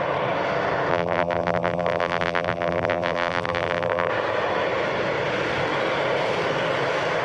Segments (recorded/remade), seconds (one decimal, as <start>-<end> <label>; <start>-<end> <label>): 0.0-0.9 recorded; 0.9-4.1 remade; 4.1-7.2 recorded